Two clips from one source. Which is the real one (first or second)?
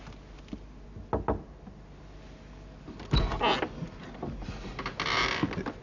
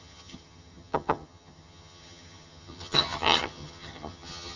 first